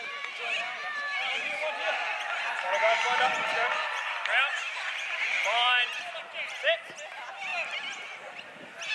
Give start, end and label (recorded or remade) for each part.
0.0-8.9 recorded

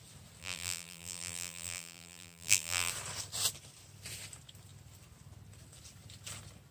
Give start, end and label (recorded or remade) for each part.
0.0-0.4 recorded; 0.4-2.9 remade; 2.9-6.7 recorded

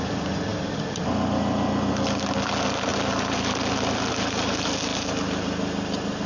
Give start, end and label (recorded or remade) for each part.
0.0-6.3 recorded

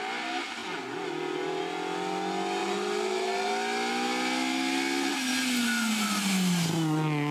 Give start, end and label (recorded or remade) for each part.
0.0-2.6 recorded; 2.6-3.5 remade; 3.5-7.3 recorded